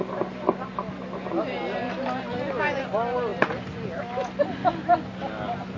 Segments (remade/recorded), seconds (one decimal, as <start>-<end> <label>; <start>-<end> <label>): 0.0-5.8 recorded